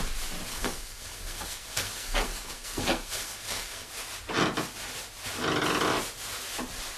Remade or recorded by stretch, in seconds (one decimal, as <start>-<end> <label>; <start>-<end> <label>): 0.0-0.5 recorded; 0.5-3.9 remade; 3.9-7.0 recorded